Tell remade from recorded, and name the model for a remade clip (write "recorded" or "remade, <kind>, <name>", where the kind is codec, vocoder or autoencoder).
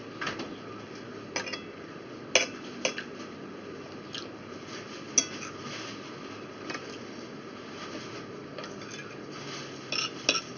recorded